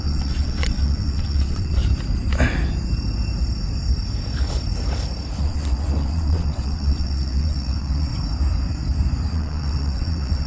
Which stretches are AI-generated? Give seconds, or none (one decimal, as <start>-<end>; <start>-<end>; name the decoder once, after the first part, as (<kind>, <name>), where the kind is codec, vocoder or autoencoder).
0.0-1.8 (vocoder, WaveNeXt); 5.4-8.1; 9.3-10.5